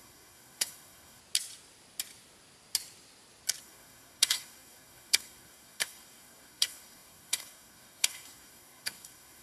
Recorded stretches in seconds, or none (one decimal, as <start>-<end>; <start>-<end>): 1.2-3.6